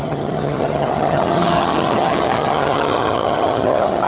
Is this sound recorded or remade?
remade